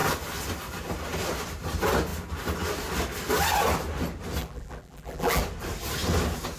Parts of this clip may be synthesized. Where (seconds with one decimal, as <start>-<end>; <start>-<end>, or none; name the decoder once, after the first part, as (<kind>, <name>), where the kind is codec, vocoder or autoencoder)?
4.4-5.4 (vocoder, BigVGAN v2)